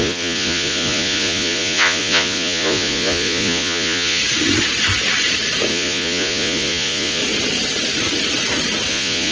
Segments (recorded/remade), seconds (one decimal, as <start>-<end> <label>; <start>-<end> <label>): 0.0-4.2 remade; 4.2-5.7 recorded; 5.7-7.2 remade; 7.2-8.9 recorded; 8.9-9.3 remade

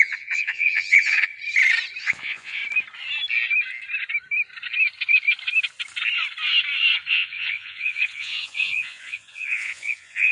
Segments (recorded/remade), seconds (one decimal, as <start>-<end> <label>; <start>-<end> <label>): 0.0-1.3 remade; 1.3-2.0 recorded; 2.0-2.6 remade; 2.6-7.1 recorded; 7.1-10.3 remade

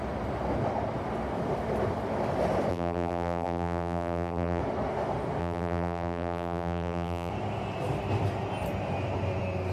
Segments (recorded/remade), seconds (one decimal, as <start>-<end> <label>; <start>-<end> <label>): 0.0-2.7 recorded; 2.7-4.6 remade; 4.6-5.4 recorded; 5.4-7.3 remade; 7.3-9.7 recorded

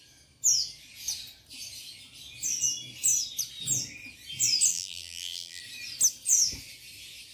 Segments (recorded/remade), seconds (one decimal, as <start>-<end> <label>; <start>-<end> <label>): 0.0-4.7 recorded; 4.7-5.6 remade; 5.6-7.3 recorded

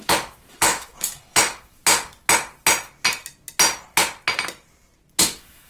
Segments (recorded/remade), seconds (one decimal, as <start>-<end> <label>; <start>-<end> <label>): 0.0-1.8 remade; 1.8-5.2 recorded; 5.2-5.7 remade

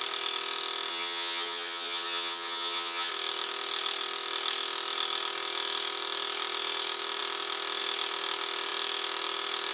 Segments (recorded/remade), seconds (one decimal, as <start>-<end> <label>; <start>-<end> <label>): 0.0-0.9 recorded; 0.9-3.1 remade; 3.1-9.7 recorded